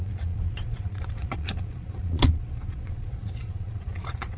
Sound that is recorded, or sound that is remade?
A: remade